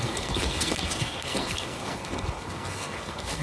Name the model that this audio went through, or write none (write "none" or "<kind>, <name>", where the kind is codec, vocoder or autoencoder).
codec, SNAC